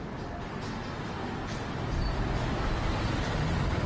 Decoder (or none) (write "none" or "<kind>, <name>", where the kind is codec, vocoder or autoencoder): none